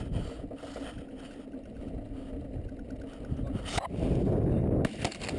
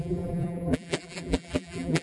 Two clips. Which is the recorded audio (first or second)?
first